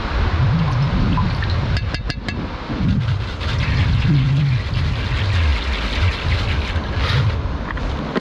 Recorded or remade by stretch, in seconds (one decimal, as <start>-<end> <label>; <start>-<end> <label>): 0.0-8.2 recorded